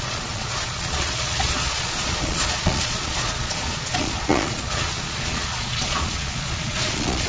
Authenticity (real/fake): fake